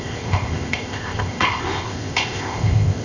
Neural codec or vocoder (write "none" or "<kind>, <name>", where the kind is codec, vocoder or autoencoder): codec, ZipCodec